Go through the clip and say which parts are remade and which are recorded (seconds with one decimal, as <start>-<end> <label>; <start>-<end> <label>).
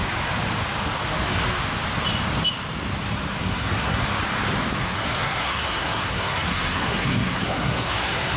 0.0-3.4 recorded; 3.4-4.0 remade; 4.0-4.8 recorded; 4.8-8.4 remade